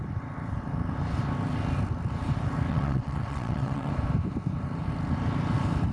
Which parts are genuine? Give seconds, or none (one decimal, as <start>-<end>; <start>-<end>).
0.0-2.7; 3.9-5.9